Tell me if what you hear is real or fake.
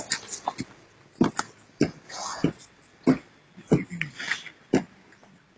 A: real